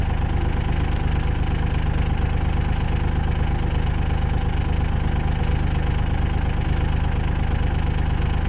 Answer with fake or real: real